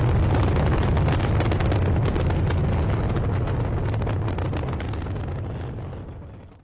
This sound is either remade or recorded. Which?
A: recorded